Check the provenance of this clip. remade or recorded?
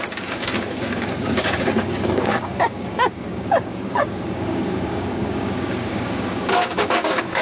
remade